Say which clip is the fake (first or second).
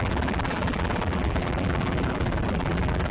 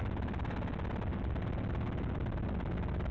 first